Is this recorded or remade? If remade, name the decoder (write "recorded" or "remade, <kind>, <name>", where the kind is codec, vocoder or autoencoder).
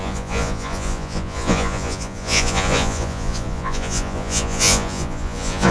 remade, vocoder, Vocos